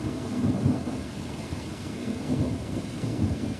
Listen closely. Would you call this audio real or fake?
fake